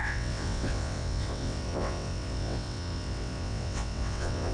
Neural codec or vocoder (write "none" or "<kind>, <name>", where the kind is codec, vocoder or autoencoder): vocoder, WaveNeXt